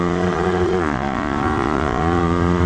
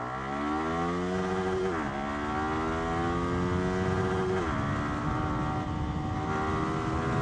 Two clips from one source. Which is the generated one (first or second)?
first